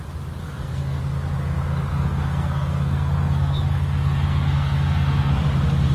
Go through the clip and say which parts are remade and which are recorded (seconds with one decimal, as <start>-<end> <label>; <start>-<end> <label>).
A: 0.0-0.4 recorded; 0.4-1.0 remade; 1.0-1.9 recorded; 1.9-5.4 remade; 5.4-5.9 recorded